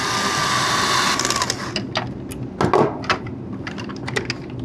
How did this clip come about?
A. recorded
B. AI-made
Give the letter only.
A